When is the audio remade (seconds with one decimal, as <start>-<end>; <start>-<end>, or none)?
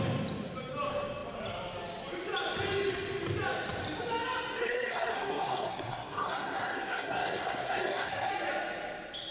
4.6-8.3